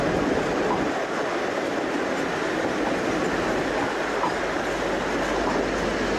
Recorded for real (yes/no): yes